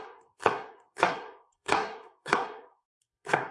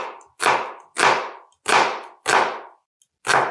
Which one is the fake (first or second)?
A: first